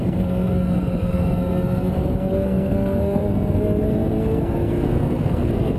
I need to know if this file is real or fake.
fake